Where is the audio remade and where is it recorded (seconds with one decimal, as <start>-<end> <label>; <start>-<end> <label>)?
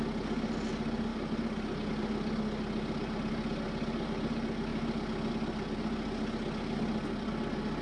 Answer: 0.0-7.8 recorded